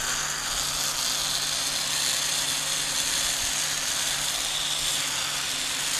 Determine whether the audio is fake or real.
real